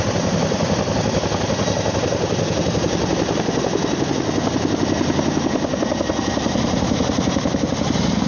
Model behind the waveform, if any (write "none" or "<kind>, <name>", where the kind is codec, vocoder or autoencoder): none